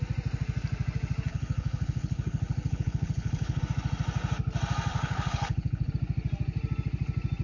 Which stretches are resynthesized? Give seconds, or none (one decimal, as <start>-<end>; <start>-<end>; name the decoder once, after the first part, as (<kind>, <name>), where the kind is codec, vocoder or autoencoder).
1.3-3.6 (codec, HILCodec); 4.9-5.9